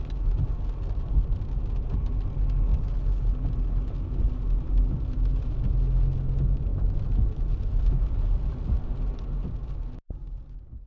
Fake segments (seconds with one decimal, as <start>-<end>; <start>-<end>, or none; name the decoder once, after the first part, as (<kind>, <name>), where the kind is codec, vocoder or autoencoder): none